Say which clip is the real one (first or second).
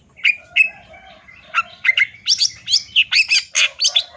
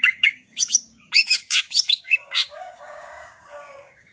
first